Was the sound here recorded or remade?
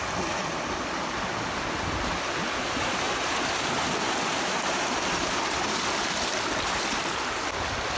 recorded